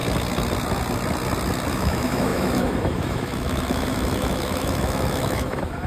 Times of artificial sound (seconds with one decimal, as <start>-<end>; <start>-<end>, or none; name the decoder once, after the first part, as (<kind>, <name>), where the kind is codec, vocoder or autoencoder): 1.7-5.9 (autoencoder, DAC-VAE)